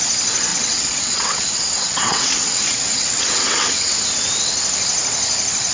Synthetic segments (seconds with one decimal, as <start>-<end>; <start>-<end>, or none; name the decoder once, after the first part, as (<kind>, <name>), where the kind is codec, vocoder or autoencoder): 0.5-3.9 (vocoder, WaveNeXt)